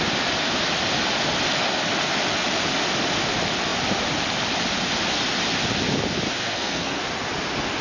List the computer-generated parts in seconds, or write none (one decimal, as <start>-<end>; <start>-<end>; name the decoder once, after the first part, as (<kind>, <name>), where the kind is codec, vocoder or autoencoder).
6.4-7.0 (codec, SNAC)